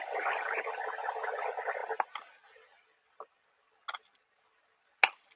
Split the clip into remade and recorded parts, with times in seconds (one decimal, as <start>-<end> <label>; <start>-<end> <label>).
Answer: 0.0-5.4 recorded